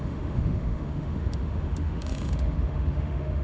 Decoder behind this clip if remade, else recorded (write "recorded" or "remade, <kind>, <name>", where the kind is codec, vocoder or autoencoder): remade, autoencoder, DAC-VAE